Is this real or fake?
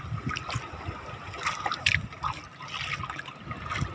real